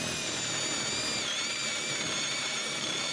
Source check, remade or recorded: recorded